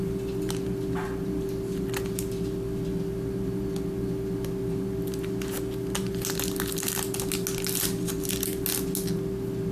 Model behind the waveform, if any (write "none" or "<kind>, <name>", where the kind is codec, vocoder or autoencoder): none